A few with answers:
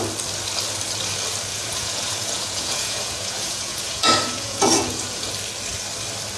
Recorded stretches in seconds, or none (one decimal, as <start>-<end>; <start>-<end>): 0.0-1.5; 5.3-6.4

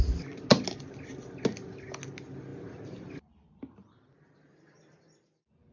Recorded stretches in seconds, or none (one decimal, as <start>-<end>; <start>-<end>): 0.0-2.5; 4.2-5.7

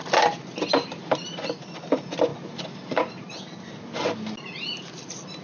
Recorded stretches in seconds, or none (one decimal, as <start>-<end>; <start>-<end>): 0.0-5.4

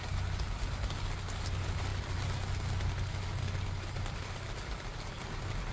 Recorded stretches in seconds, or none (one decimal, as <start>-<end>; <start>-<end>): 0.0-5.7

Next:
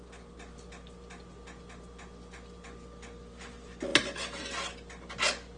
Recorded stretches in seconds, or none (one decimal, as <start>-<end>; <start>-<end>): 0.0-5.6